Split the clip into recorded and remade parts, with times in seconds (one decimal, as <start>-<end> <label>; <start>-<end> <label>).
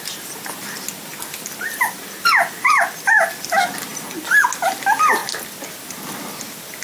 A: 0.0-3.9 recorded; 3.9-4.5 remade; 4.5-6.8 recorded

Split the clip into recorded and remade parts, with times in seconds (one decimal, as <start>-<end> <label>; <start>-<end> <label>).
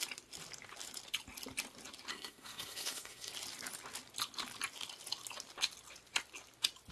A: 0.0-2.1 recorded; 2.1-3.3 remade; 3.3-6.9 recorded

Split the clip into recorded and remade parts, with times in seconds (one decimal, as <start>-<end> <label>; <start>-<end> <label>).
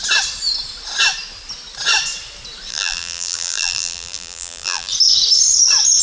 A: 0.0-2.7 recorded; 2.7-4.9 remade; 4.9-6.0 recorded